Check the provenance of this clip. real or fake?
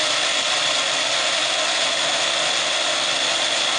real